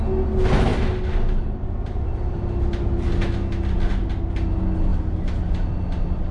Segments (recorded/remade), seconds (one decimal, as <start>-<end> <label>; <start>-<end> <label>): 0.0-6.3 recorded

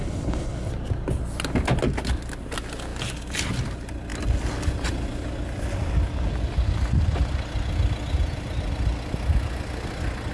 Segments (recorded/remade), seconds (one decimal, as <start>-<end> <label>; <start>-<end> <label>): 0.0-0.7 remade; 0.7-10.3 recorded

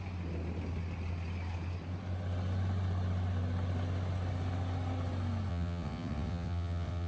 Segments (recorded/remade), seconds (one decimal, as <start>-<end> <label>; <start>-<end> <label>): 0.0-5.5 recorded; 5.5-7.1 remade

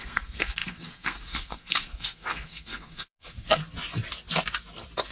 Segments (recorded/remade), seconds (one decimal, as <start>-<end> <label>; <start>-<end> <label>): 0.0-3.6 remade; 3.6-5.1 recorded